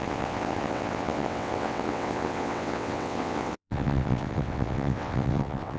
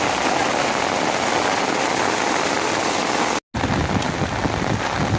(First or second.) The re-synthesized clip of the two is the first